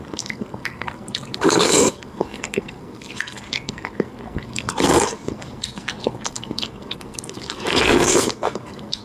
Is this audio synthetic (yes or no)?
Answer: yes